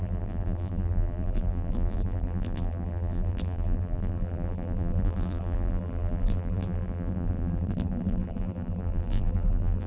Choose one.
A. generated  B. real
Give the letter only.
A